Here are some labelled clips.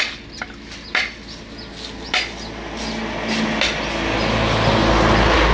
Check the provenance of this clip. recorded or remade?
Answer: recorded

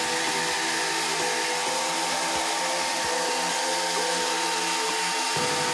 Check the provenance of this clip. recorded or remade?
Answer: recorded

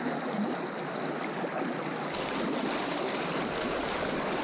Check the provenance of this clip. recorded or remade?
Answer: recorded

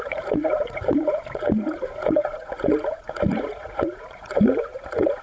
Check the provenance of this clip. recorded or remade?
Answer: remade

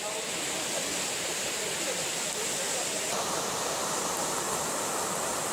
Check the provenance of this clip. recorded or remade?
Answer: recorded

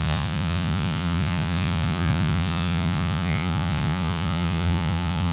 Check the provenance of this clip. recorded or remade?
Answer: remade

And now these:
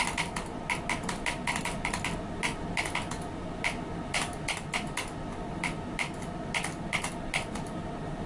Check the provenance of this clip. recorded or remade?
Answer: recorded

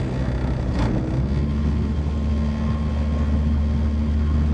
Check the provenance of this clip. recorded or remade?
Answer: recorded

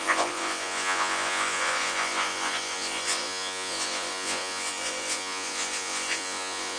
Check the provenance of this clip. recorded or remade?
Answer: remade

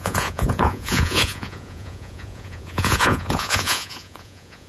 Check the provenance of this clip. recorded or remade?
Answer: remade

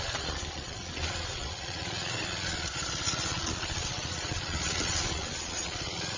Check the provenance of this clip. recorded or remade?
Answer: remade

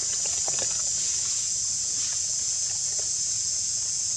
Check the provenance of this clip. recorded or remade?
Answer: remade